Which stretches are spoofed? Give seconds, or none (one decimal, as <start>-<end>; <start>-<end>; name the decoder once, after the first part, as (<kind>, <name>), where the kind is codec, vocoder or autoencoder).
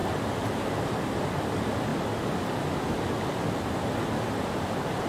none